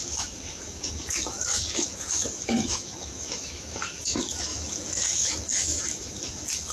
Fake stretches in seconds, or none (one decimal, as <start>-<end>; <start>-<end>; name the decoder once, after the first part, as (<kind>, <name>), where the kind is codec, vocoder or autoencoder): 0.0-6.7 (autoencoder, DAC-VAE)